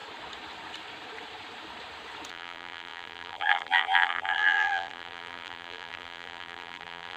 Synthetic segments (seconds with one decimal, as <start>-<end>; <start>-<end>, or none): 2.3-7.2